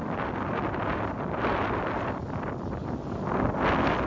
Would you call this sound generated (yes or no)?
no